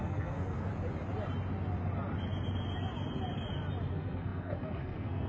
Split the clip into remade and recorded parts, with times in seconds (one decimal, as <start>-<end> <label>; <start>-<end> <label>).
0.0-0.7 remade; 0.7-3.9 recorded; 3.9-5.3 remade